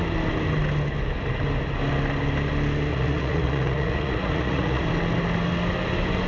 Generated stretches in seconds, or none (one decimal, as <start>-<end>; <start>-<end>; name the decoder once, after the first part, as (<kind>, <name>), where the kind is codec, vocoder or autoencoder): 2.9-4.8 (vocoder, Vocos)